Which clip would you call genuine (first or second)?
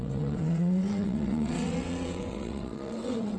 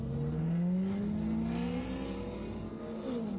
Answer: second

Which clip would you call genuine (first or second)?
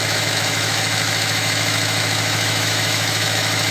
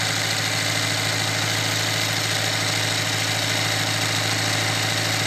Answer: second